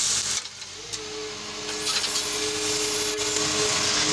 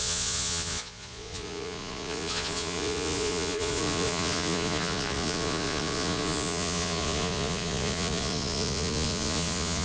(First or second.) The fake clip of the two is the second